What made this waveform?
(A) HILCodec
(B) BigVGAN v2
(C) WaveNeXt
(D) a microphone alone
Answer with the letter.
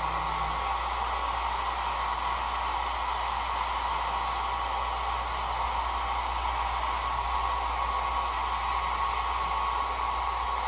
D